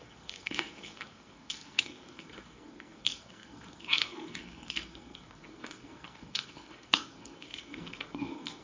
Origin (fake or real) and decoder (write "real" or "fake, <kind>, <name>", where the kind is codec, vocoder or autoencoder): fake, codec, SNAC